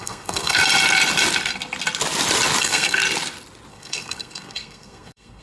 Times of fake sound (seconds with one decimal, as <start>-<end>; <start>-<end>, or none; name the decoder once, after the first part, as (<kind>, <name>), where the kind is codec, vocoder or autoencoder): 0.0-0.6 (codec, SNAC); 2.6-3.0; 3.7-5.4